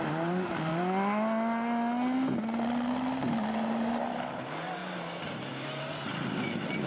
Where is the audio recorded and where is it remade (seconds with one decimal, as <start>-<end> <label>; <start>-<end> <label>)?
0.0-0.7 remade; 0.7-4.1 recorded; 4.1-4.8 remade; 4.8-5.5 recorded; 5.5-6.9 remade